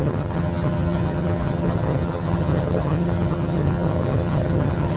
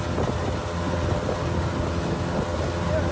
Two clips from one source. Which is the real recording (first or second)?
second